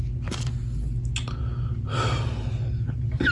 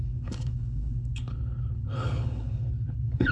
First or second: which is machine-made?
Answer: second